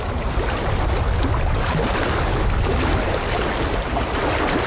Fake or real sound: real